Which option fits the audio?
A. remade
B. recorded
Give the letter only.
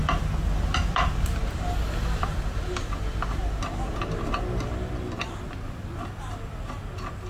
B